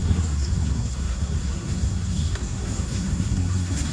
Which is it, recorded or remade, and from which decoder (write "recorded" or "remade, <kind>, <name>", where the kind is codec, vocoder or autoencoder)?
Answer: remade, codec, SNAC